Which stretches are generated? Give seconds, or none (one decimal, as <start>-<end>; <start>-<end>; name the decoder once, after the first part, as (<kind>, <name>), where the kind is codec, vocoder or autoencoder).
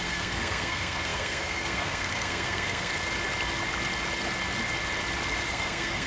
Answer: 0.0-2.9 (codec, SNAC); 5.5-6.1